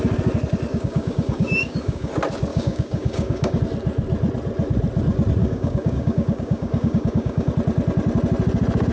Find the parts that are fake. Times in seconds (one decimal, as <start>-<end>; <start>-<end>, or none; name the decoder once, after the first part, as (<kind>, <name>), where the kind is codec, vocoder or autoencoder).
0.7-2.1 (codec, DAC); 2.5-3.6; 5.4-7.5